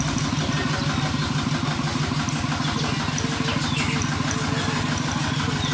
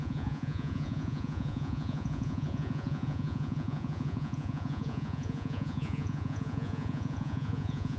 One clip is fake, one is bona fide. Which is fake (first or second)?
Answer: second